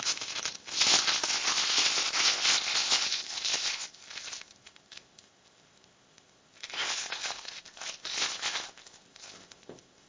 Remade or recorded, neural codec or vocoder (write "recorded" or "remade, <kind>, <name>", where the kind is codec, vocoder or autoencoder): remade, codec, ZipCodec